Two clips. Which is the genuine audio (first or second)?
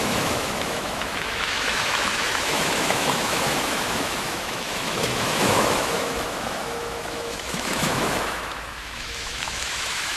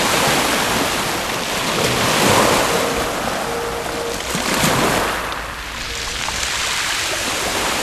second